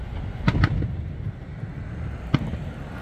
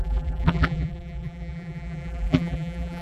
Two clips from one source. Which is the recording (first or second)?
first